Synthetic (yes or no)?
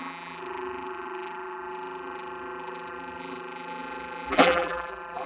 yes